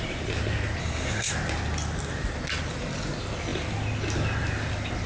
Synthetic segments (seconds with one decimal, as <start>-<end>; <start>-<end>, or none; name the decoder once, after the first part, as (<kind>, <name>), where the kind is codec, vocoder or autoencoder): 0.8-1.3 (codec, SNAC)